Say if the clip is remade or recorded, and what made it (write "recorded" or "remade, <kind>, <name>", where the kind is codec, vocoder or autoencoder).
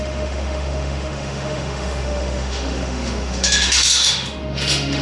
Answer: remade, autoencoder, DAC-VAE